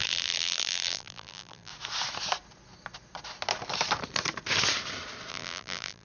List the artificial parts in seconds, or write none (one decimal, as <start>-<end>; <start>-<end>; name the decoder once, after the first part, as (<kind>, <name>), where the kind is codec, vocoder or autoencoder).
0.0-1.7 (vocoder, BigVGAN v2); 5.3-6.0